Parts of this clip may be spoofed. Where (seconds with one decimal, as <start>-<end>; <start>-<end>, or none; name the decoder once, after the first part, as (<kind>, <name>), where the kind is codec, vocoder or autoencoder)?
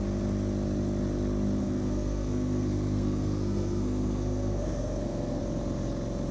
1.6-5.4 (codec, SNAC)